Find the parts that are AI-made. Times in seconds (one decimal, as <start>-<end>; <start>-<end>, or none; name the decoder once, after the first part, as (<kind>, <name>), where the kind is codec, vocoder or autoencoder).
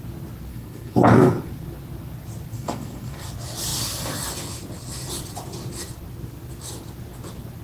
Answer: 0.5-1.5 (codec, SNAC); 2.5-3.3